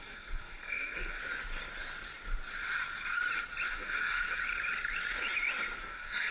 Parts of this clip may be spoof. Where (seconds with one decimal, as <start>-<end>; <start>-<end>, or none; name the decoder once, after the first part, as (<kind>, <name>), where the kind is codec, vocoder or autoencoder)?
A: 0.0-1.2 (codec, SNAC); 3.7-4.4; 5.8-6.3

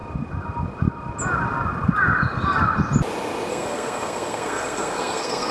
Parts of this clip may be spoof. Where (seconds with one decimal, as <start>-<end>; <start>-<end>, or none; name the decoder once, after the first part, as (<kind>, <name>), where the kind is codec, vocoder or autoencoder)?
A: 3.5-5.5 (codec, SNAC)

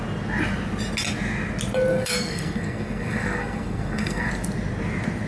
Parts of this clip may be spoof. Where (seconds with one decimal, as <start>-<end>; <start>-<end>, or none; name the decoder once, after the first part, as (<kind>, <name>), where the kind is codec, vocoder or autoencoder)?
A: 1.9-4.3 (codec, SNAC)

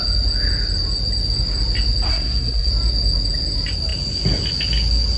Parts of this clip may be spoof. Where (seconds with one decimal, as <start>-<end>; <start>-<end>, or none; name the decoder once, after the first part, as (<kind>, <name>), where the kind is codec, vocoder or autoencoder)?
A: 2.1-2.7 (codec, SNAC)